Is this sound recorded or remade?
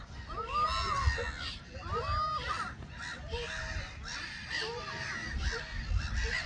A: recorded